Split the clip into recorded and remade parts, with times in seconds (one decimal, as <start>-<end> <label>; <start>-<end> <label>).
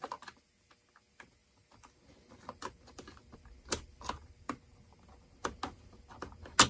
0.0-1.4 recorded; 1.4-4.9 remade; 4.9-6.7 recorded